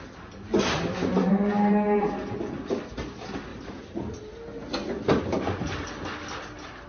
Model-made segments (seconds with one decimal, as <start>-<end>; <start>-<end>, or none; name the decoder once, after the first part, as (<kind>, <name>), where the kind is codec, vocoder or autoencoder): 1.2-2.1 (vocoder, BigVGAN v2); 3.5-4.2